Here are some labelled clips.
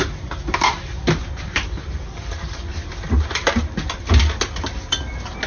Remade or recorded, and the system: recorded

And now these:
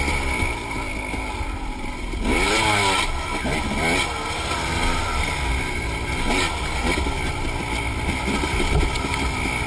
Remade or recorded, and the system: recorded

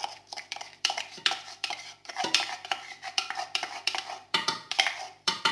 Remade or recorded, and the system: remade, vocoder, BigVGAN v2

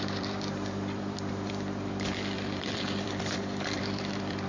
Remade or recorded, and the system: remade, vocoder, BigVGAN v2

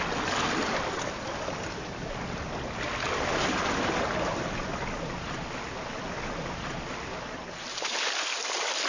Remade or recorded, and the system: recorded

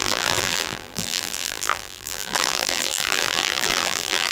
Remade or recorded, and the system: remade, vocoder, BigVGAN v2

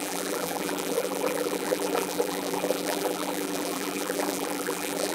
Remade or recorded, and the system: remade, vocoder, BigVGAN v2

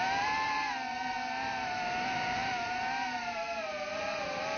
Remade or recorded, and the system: remade, vocoder, BigVGAN v2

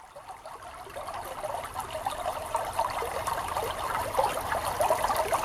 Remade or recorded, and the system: recorded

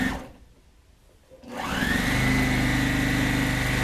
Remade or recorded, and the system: recorded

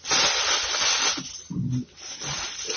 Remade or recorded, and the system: recorded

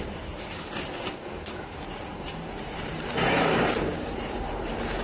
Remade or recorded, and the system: remade, vocoder, BigVGAN v2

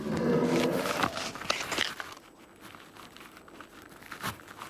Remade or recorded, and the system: recorded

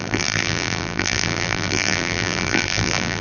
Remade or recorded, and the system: remade, vocoder, BigVGAN v2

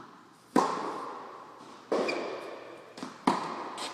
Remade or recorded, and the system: recorded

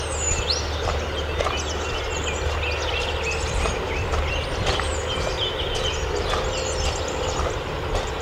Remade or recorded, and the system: recorded